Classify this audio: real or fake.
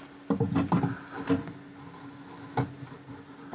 real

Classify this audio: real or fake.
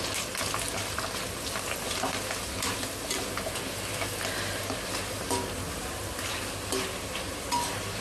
real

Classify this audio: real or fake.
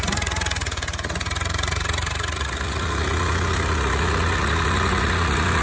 fake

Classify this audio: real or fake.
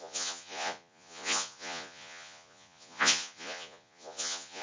fake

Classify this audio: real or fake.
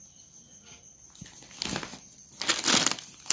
real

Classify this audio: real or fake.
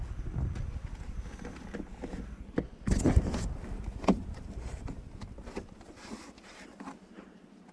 real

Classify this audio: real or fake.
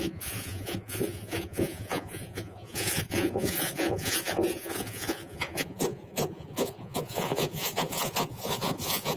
fake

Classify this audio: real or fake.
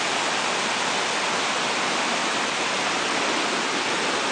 real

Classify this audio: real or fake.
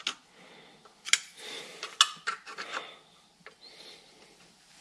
real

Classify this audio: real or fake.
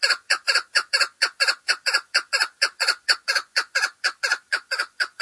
fake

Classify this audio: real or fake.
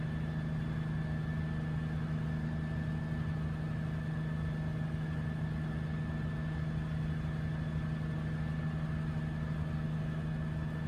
real